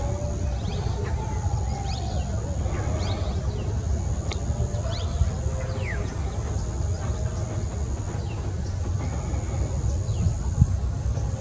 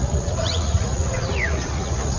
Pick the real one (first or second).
first